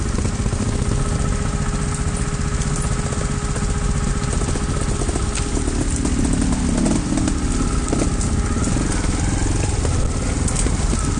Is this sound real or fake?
real